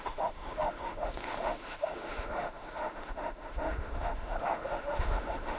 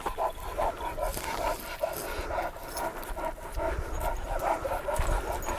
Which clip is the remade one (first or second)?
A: first